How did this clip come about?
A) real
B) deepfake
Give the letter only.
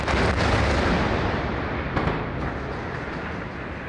A